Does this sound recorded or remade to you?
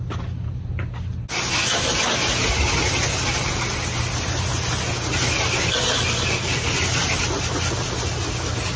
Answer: recorded